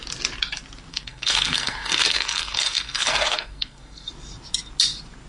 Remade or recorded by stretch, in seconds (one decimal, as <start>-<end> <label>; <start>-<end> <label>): 0.0-0.9 recorded; 0.9-4.1 remade; 4.1-5.3 recorded